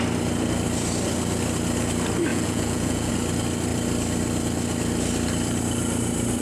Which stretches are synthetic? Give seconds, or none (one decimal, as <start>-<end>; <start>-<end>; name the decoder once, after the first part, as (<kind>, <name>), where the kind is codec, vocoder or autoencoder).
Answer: 2.3-3.1 (vocoder, Vocos)